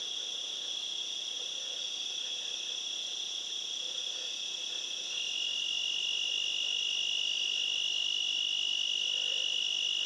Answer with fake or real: real